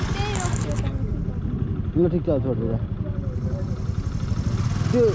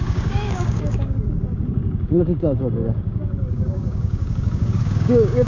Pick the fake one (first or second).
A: second